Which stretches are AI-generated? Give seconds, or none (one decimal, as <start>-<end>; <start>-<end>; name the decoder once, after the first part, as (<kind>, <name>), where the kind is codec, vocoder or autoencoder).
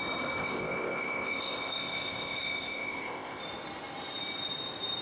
0.4-3.4 (codec, ZipCodec)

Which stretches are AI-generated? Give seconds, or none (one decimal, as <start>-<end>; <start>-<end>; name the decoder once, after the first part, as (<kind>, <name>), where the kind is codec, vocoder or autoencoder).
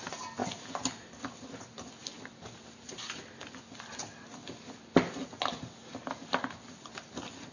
none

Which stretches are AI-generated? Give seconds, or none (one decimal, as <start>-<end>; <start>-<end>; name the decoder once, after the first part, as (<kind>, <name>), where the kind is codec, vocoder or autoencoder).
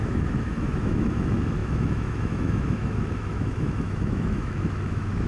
0.0-5.3 (autoencoder, DAC-VAE)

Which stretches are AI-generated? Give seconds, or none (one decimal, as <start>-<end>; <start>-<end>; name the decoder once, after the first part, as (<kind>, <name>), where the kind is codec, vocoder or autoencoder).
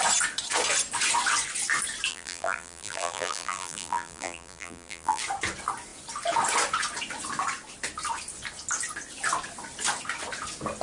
2.1-5.2 (vocoder, BigVGAN v2)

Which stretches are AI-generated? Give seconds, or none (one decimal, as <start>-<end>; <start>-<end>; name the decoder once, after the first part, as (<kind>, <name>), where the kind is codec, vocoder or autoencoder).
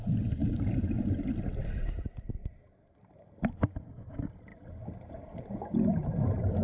none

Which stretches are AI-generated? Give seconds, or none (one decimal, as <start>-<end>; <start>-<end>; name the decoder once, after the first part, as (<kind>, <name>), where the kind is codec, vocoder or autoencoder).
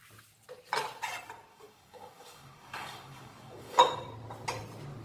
1.5-3.8 (codec, DAC)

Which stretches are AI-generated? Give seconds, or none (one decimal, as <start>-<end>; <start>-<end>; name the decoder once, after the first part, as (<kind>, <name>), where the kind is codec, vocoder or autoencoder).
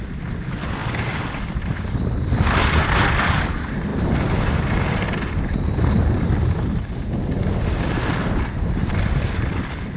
3.9-5.0 (vocoder, BigVGAN v2)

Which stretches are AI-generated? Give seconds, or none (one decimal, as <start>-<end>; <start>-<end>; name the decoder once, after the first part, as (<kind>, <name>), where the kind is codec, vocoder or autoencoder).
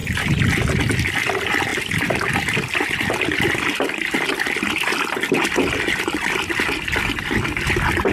0.0-0.8 (vocoder, BigVGAN v2); 1.7-6.5